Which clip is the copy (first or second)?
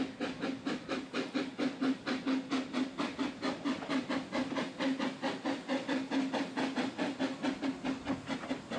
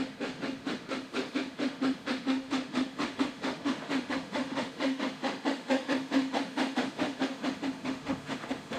second